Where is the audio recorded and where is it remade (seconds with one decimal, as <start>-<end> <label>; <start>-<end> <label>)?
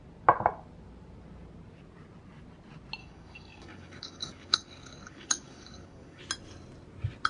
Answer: 0.0-3.0 recorded; 3.0-6.2 remade; 6.2-7.3 recorded